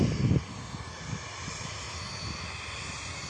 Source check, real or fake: real